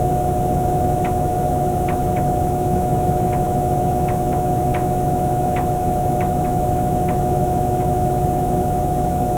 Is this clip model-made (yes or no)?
yes